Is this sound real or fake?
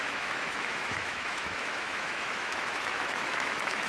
fake